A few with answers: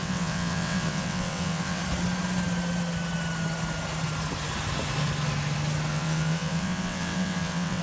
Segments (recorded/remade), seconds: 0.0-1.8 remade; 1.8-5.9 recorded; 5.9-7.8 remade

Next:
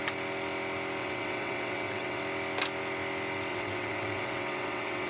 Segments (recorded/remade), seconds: 0.0-1.0 recorded; 1.0-2.2 remade; 2.2-3.5 recorded; 3.5-5.1 remade

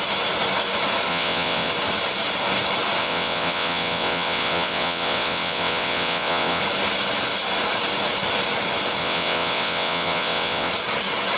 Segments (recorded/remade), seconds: 0.0-1.1 recorded; 1.1-1.7 remade; 1.7-3.0 recorded; 3.0-6.6 remade; 6.6-9.0 recorded; 9.0-10.7 remade; 10.7-11.4 recorded

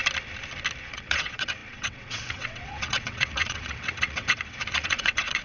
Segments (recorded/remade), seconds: 0.0-0.9 recorded; 0.9-5.4 remade

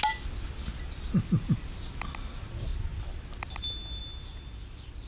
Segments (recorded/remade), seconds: 0.0-5.1 recorded

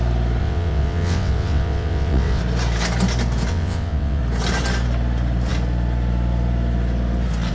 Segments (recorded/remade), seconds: 0.0-0.4 recorded; 0.4-2.4 remade; 2.4-3.5 recorded; 3.5-4.2 remade; 4.2-7.5 recorded

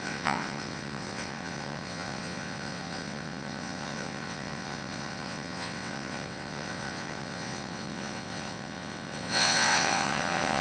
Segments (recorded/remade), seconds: 0.0-10.6 remade

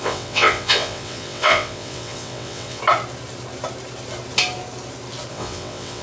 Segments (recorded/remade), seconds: 0.0-2.8 remade; 2.8-5.3 recorded; 5.3-6.0 remade